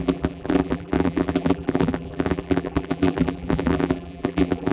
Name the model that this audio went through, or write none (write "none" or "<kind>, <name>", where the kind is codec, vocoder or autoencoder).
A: vocoder, BigVGAN v2